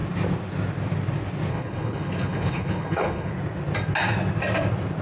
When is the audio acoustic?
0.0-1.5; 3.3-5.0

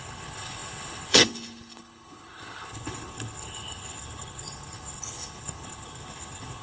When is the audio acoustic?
none

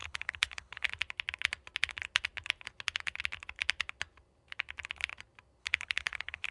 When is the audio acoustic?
0.9-5.6

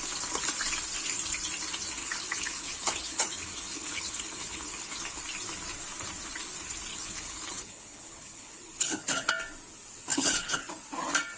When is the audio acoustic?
0.0-2.0; 5.2-6.9; 9.3-10.1; 10.7-11.4

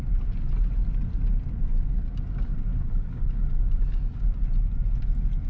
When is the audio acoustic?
0.0-2.7; 3.4-5.5

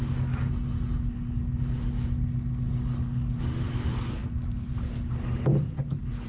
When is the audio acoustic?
0.0-6.3